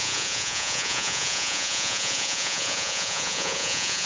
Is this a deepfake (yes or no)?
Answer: yes